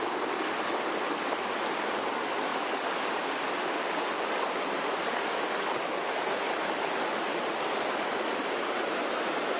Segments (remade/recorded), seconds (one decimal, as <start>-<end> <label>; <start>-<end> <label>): 0.0-9.6 recorded